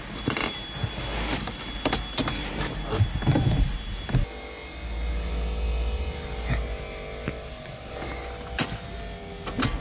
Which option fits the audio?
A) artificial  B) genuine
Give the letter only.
B